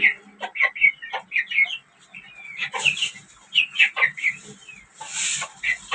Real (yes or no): yes